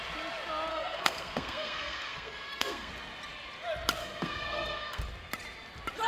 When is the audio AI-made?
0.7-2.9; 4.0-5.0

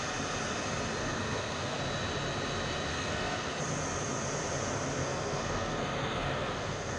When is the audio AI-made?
1.0-1.8; 2.9-3.6; 5.0-7.0

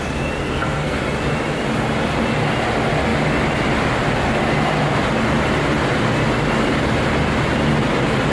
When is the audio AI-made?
0.4-1.0

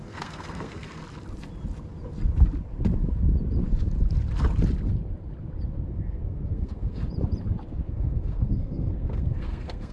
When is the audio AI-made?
0.0-1.0; 5.9-7.0; 7.9-9.9

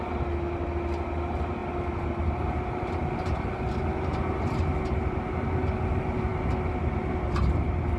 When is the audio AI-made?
none

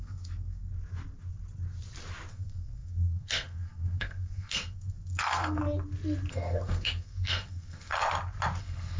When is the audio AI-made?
0.0-0.7; 2.3-5.6; 6.3-7.9; 8.6-9.0

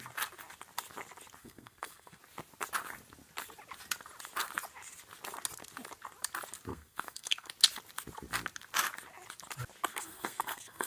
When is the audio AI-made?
1.4-2.2; 6.7-7.5; 9.9-10.9